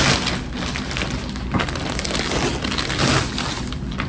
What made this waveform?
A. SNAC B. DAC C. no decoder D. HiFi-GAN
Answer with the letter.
C